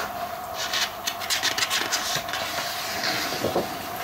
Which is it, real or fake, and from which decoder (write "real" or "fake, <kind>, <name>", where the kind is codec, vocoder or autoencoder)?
real